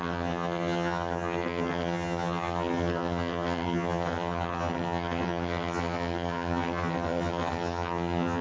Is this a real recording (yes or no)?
no